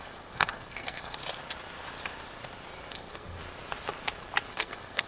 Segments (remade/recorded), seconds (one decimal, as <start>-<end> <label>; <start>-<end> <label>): 0.0-1.2 remade; 1.2-2.9 recorded; 2.9-3.4 remade; 3.4-4.5 recorded; 4.5-5.1 remade